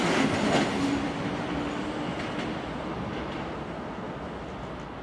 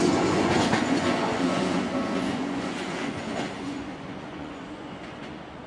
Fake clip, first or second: second